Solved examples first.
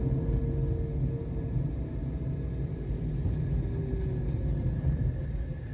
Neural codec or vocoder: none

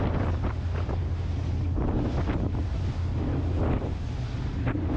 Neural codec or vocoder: none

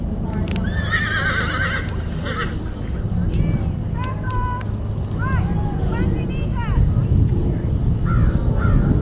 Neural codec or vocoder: none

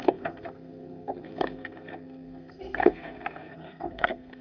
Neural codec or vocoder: codec, SNAC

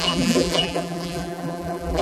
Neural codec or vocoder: vocoder, BigVGAN v2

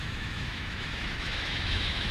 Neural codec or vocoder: autoencoder, DAC-VAE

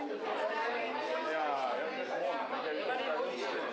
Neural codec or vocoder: none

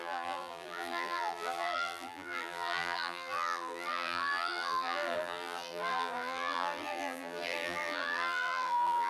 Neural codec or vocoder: vocoder, BigVGAN v2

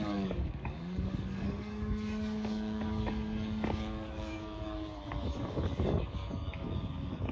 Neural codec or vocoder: codec, DAC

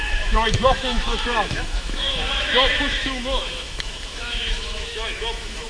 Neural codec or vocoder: autoencoder, DAC-VAE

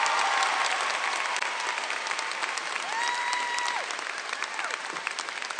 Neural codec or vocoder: none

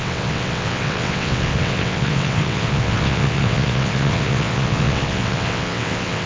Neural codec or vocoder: vocoder, WaveNeXt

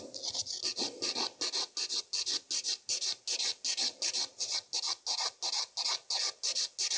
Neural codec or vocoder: none